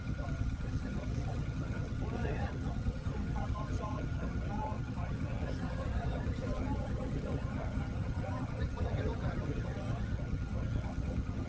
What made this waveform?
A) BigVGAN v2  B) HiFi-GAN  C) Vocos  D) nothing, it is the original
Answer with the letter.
B